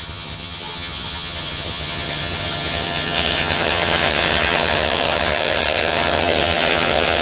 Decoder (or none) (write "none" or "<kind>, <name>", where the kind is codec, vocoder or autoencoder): vocoder, HiFi-GAN